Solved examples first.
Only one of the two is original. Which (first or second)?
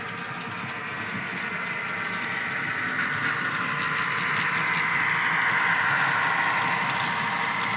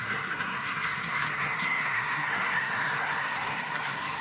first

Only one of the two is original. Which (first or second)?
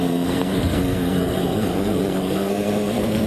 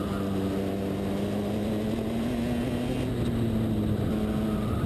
second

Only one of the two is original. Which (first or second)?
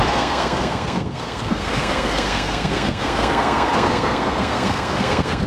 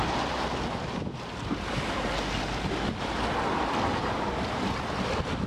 second